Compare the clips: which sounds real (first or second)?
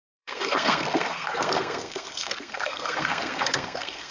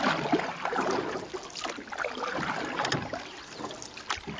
second